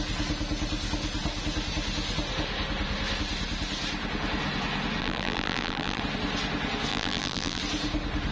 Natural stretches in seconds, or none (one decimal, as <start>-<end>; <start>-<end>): 0.0-5.0; 6.0-6.9; 7.6-8.3